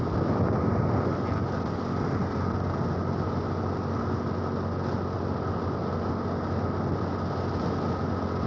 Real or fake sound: real